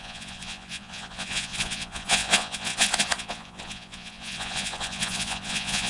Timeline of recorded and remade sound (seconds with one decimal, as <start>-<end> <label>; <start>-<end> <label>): 0.0-5.9 remade

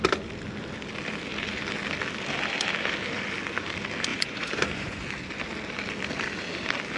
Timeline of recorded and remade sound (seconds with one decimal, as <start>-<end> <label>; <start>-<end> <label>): 0.0-4.1 recorded; 4.1-5.0 remade; 5.0-7.0 recorded

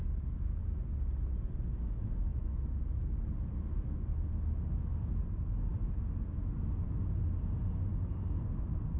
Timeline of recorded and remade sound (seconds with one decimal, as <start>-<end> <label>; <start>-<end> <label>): 0.0-9.0 recorded

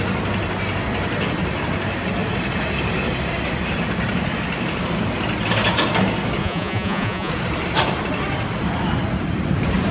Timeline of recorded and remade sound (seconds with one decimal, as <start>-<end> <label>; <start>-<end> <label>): 0.0-6.4 recorded; 6.4-7.3 remade; 7.3-9.9 recorded

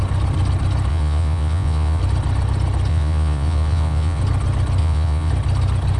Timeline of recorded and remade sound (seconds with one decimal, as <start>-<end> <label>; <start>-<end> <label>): 0.0-0.9 recorded; 0.9-2.0 remade; 2.0-2.9 recorded; 2.9-4.2 remade; 4.2-4.8 recorded; 4.8-5.3 remade; 5.3-6.0 recorded